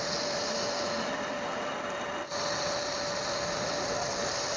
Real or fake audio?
real